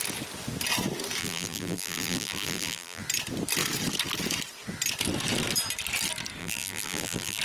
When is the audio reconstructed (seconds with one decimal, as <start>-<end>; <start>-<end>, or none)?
1.2-3.0; 6.4-7.4